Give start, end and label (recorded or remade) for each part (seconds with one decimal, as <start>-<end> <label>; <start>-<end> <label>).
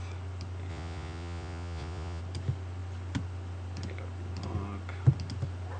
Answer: 0.0-0.7 recorded; 0.7-2.2 remade; 2.2-5.8 recorded